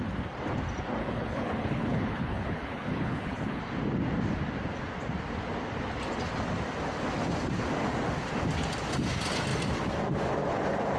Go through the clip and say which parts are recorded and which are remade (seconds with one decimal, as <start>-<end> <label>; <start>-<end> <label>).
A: 0.0-1.0 recorded; 1.0-3.6 remade; 3.6-11.0 recorded